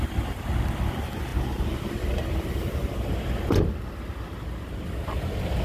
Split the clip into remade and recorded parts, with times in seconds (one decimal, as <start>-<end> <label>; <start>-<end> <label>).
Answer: 0.0-5.6 recorded